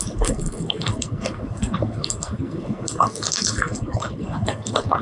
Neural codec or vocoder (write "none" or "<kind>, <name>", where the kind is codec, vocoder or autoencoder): codec, SNAC